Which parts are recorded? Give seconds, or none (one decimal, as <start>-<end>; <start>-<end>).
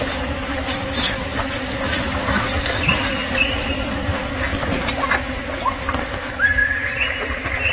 4.1-5.8; 6.6-7.2